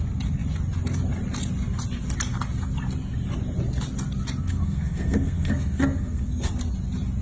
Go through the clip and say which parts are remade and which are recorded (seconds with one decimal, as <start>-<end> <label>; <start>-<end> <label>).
0.0-4.4 recorded; 4.4-6.5 remade; 6.5-7.2 recorded